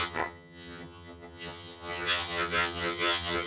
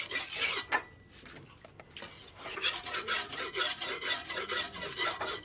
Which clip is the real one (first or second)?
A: second